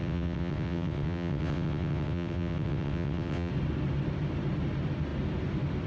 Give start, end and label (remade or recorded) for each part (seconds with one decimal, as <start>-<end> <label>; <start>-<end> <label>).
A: 0.0-3.5 remade; 3.5-5.9 recorded